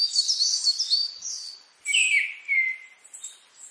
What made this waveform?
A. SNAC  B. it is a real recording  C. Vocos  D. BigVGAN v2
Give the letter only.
B